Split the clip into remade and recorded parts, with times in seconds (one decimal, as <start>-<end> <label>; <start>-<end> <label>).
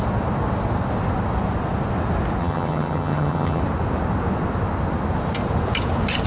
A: 0.0-2.4 recorded; 2.4-3.6 remade; 3.6-6.3 recorded